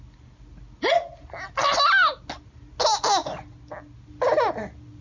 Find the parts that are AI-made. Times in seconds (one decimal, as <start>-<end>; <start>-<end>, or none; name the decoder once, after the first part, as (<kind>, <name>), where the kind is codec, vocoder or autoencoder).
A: none